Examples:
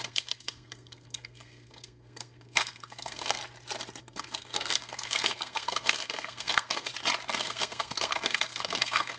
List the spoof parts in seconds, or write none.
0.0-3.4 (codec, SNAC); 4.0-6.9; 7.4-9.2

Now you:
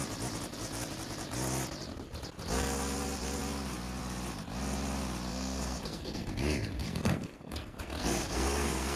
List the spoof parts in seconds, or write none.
5.3-9.0 (codec, SNAC)

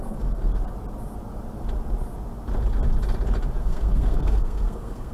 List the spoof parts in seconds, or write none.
0.0-0.5 (codec, SNAC); 3.6-5.1

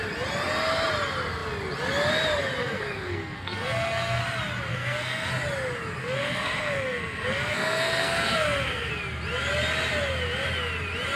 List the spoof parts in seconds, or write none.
2.6-4.2 (codec, SNAC); 4.7-5.3; 6.0-8.9

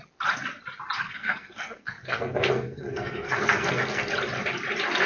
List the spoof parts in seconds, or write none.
1.0-4.1 (codec, SNAC)

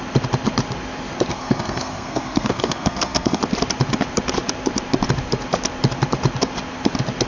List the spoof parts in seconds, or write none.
1.3-3.4 (codec, SNAC)

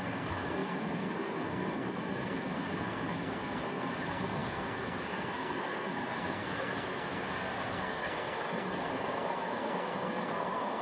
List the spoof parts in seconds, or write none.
0.0-10.8 (codec, SNAC)